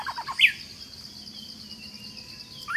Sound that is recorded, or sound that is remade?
recorded